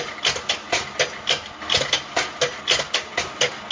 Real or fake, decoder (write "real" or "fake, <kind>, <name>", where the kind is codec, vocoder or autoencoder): real